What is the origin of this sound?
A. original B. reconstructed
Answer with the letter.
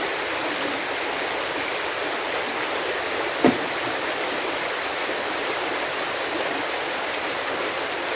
A